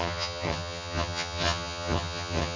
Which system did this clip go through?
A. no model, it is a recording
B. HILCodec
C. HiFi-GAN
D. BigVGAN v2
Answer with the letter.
C